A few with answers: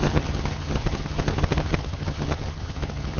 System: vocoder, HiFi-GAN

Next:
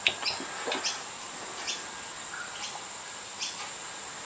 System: none